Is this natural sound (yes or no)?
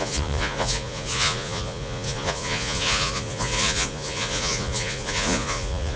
no